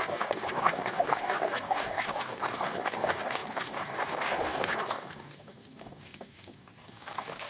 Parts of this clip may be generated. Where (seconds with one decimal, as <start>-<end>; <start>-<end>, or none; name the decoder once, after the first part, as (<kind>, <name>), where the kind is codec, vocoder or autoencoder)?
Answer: 0.0-7.5 (codec, DAC)